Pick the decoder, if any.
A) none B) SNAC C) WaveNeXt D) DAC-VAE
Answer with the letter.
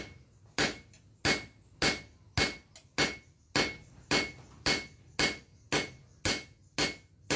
A